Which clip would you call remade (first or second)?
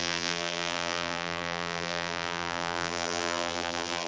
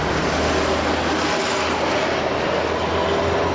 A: first